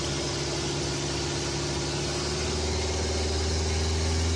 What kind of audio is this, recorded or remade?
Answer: recorded